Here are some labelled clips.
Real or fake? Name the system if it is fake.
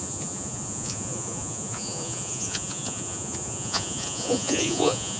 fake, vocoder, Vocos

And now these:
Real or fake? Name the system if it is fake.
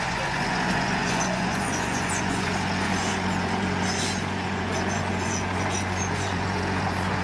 fake, vocoder, Vocos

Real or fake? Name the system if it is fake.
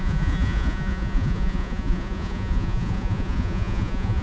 fake, vocoder, Vocos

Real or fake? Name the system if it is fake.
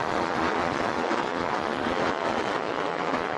fake, vocoder, Vocos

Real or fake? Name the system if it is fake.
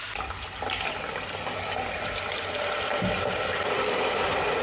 real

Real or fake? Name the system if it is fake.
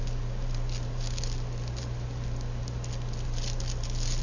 real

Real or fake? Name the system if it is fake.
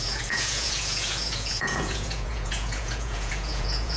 fake, vocoder, Vocos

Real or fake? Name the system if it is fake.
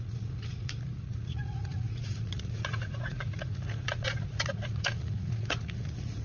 fake, vocoder, Vocos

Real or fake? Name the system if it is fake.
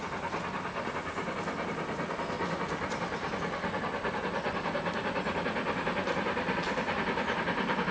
real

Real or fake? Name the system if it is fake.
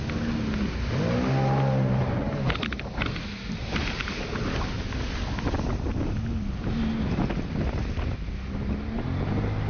real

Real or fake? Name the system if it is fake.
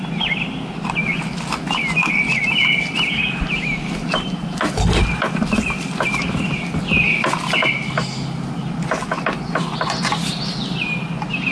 real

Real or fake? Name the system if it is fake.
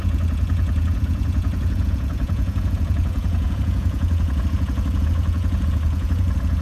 fake, vocoder, Vocos